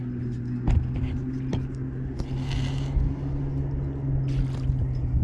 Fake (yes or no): no